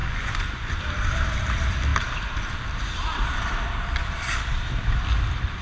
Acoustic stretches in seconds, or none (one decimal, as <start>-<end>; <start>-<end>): 0.8-5.6